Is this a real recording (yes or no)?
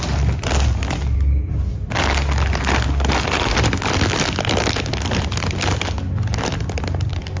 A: yes